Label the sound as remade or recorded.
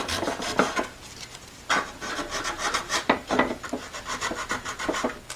recorded